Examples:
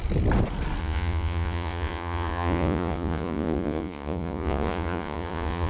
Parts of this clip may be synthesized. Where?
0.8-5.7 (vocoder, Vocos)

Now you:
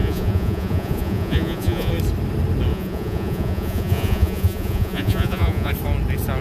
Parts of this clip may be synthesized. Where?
0.0-1.9 (vocoder, Vocos); 2.7-5.7

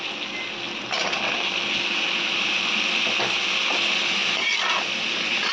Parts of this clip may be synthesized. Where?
none